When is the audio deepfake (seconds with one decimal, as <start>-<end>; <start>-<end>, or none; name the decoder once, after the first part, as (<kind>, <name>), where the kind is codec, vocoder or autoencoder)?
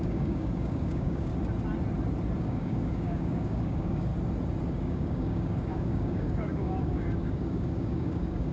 0.0-1.3 (codec, DAC); 2.4-4.1; 4.6-8.5